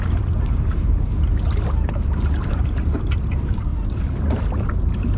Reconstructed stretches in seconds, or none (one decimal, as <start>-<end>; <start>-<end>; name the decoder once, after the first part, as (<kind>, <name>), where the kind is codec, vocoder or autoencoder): 0.0-1.3 (vocoder, BigVGAN v2); 2.5-3.7; 4.2-5.2

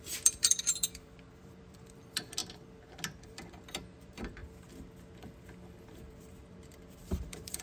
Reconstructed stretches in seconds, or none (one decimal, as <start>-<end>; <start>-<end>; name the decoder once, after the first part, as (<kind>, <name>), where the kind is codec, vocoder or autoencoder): 0.0-2.4 (vocoder, BigVGAN v2); 3.2-4.4; 5.9-7.6